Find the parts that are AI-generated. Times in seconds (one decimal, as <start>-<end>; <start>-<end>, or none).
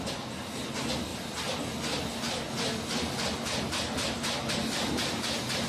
none